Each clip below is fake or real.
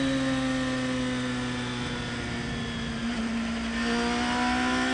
real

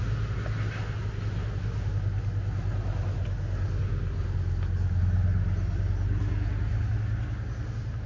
real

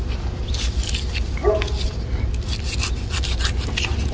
real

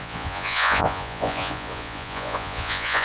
fake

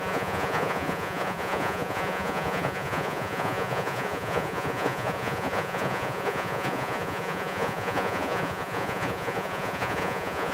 fake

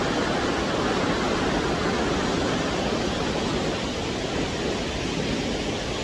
real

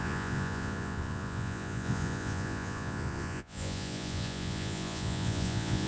fake